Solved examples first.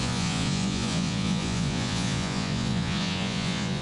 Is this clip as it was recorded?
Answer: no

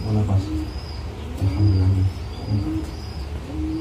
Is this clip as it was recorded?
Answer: yes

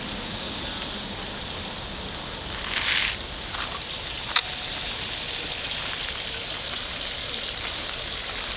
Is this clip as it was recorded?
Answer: yes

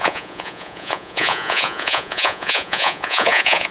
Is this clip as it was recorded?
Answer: no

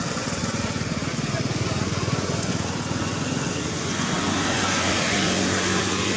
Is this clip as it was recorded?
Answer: no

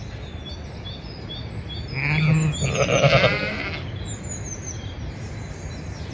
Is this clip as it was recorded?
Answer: yes